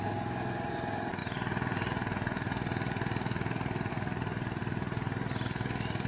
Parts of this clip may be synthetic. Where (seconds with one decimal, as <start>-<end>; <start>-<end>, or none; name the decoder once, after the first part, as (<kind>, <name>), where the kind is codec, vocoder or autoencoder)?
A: none